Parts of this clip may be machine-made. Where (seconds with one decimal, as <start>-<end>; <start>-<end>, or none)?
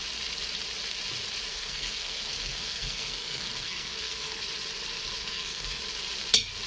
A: 1.5-4.4; 5.2-5.8